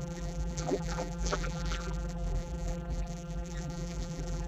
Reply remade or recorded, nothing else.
remade